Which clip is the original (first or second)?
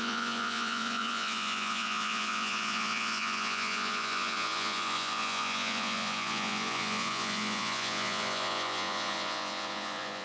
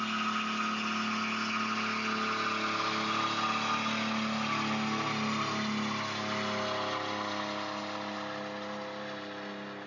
second